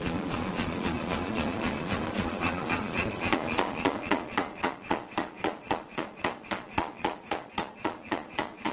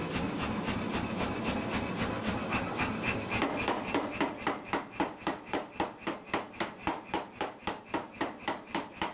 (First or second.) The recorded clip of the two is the second